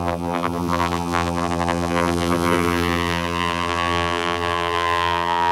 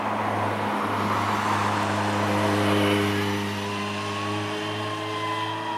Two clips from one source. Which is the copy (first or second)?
first